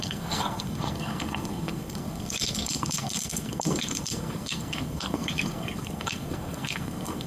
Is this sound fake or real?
fake